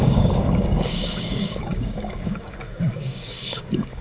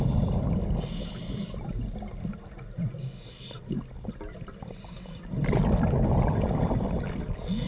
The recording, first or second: second